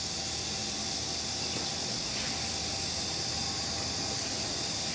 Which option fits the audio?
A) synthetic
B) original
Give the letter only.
B